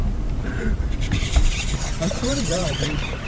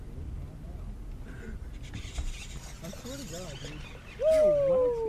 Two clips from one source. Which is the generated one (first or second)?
first